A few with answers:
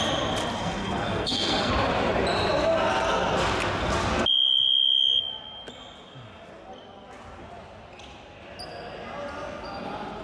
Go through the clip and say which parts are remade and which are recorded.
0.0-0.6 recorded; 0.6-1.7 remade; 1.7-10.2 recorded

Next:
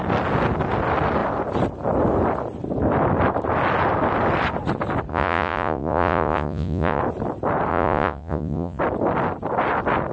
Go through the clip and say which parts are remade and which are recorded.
0.0-5.1 recorded; 5.1-7.0 remade; 7.0-7.7 recorded; 7.7-8.8 remade; 8.8-10.1 recorded

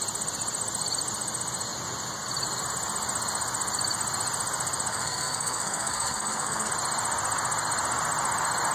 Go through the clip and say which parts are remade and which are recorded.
0.0-4.9 recorded; 4.9-6.7 remade; 6.7-8.7 recorded

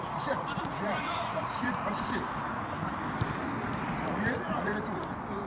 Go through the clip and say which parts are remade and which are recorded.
0.0-1.9 remade; 1.9-4.0 recorded; 4.0-4.7 remade; 4.7-5.5 recorded

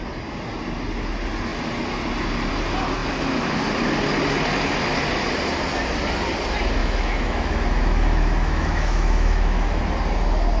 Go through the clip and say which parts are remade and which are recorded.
0.0-6.8 recorded; 6.8-9.8 remade; 9.8-10.6 recorded

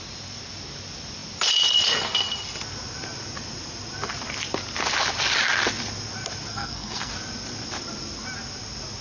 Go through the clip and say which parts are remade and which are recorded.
0.0-6.5 recorded; 6.5-7.1 remade; 7.1-9.0 recorded

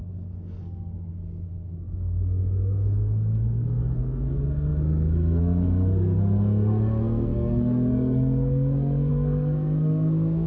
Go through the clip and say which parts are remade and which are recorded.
0.0-10.5 remade

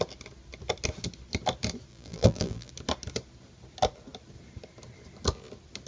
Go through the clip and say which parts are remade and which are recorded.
0.0-1.9 recorded; 1.9-2.7 remade; 2.7-5.9 recorded